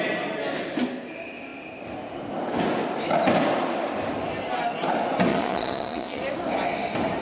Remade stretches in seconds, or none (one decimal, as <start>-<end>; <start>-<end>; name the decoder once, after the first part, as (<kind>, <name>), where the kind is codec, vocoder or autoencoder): 5.3-6.2 (vocoder, Vocos)